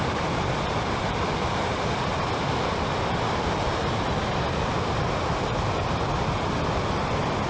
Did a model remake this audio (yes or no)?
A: yes